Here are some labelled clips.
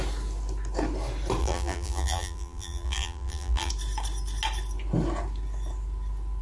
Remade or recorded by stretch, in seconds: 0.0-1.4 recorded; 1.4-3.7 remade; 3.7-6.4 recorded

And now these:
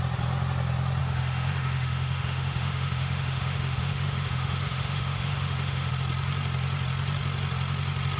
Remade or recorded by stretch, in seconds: 0.0-1.0 recorded; 1.0-5.9 remade; 5.9-8.2 recorded

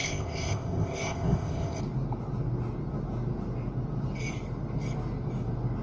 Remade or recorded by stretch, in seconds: 0.0-1.8 remade; 1.8-5.8 recorded

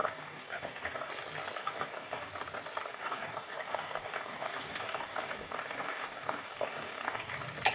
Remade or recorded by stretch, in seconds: 0.0-1.1 remade; 1.1-1.6 recorded; 1.6-2.3 remade; 2.3-2.9 recorded; 2.9-7.3 remade; 7.3-7.7 recorded

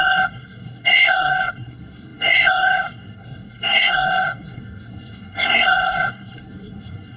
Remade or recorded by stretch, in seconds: 0.0-7.2 remade

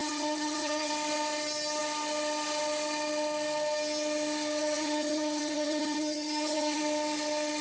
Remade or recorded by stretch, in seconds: 0.0-0.9 remade; 0.9-4.6 recorded; 4.6-6.8 remade; 6.8-7.6 recorded

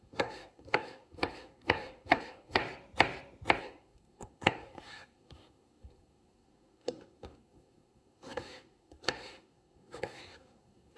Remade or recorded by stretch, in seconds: 0.0-2.6 remade; 2.6-3.6 recorded; 3.6-11.0 remade